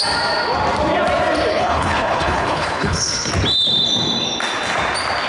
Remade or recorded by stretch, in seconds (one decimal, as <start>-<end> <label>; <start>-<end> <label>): 0.0-1.5 recorded; 1.5-3.3 remade; 3.3-5.3 recorded